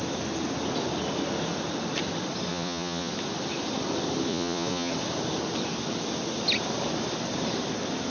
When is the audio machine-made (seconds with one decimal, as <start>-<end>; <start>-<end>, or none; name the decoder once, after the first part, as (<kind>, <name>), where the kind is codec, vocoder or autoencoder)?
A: 2.5-3.1 (vocoder, Vocos); 4.3-4.9